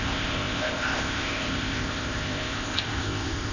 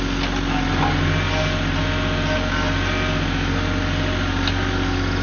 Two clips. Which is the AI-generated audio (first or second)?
first